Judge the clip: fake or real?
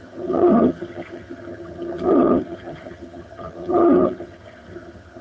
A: fake